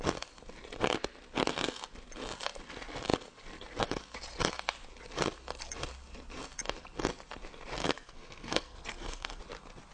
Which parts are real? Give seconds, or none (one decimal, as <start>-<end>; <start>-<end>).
0.0-7.8; 9.4-9.9